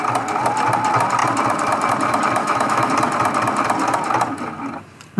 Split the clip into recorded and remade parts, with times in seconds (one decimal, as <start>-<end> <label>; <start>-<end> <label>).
0.0-2.4 recorded; 2.4-2.9 remade; 2.9-5.2 recorded